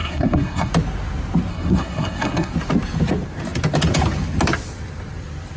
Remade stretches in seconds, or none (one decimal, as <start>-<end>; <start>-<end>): 0.0-0.7; 1.5-2.5